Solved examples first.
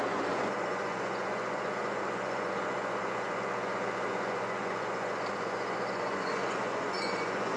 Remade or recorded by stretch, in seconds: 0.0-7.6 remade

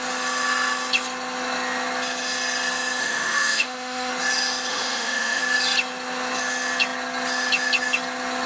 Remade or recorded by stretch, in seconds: 0.0-3.0 recorded; 3.0-4.1 remade; 4.1-4.7 recorded; 4.7-5.4 remade; 5.4-8.5 recorded